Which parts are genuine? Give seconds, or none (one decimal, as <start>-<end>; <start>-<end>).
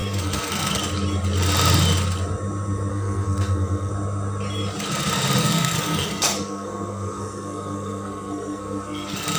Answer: 0.8-2.9; 3.9-5.4